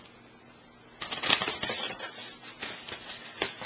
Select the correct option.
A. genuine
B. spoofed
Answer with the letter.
A